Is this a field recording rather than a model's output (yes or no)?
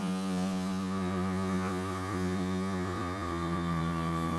no